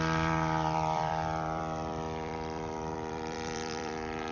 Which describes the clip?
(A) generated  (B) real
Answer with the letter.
A